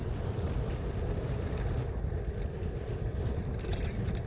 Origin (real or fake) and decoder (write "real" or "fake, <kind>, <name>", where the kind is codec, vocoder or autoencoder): real